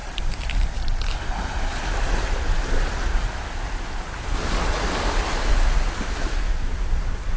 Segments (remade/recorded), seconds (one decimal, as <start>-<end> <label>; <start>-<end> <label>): 0.0-7.4 recorded